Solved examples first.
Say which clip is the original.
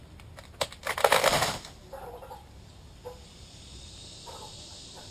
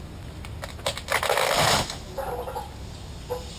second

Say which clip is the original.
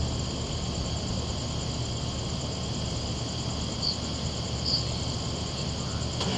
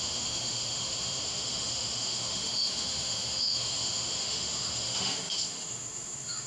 first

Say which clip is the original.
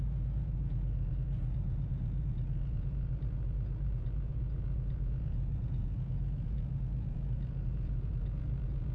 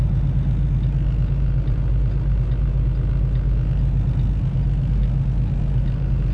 second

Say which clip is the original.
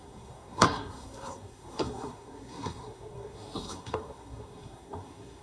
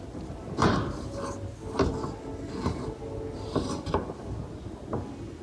second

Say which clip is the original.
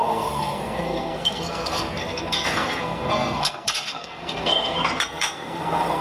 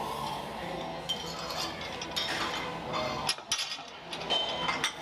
second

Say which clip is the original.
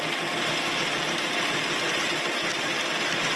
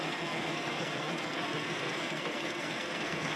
first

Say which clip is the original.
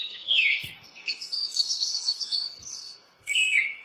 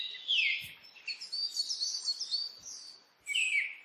second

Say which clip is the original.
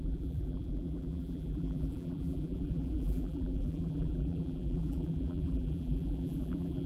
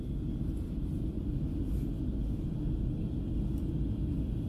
second